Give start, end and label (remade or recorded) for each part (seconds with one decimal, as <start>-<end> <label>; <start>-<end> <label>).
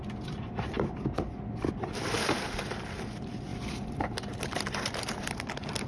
0.0-5.9 recorded